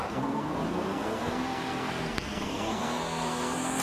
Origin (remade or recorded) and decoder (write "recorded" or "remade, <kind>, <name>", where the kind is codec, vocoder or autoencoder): remade, codec, SNAC